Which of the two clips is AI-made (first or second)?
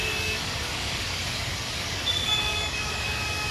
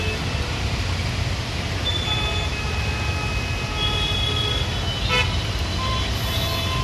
first